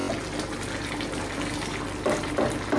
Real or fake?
real